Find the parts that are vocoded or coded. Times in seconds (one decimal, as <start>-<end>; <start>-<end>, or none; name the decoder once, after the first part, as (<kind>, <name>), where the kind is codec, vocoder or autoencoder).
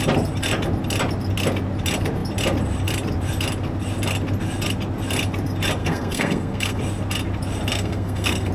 5.8-6.8 (codec, SNAC); 7.7-8.5